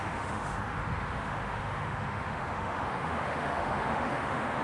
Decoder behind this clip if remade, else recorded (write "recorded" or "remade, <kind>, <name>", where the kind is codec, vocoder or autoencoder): remade, autoencoder, DAC-VAE